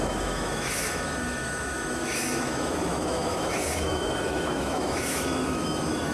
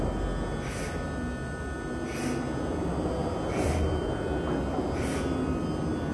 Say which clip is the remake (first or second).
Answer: first